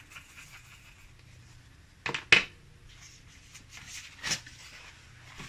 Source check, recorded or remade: recorded